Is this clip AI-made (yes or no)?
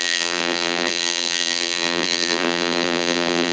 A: yes